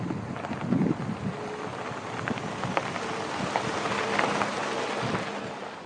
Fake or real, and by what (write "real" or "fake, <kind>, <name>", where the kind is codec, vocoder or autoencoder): real